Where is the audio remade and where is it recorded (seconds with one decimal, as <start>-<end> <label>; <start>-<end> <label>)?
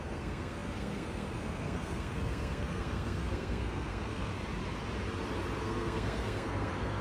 0.0-4.3 remade; 4.3-5.6 recorded; 5.6-7.0 remade